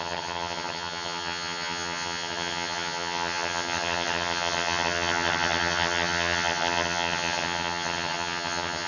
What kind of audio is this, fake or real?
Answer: fake